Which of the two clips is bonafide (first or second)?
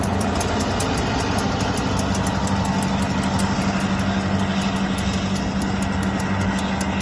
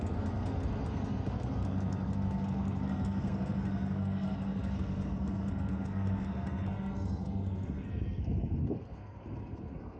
first